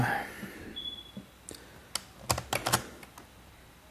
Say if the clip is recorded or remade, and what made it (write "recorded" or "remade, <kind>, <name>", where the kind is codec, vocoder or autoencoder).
recorded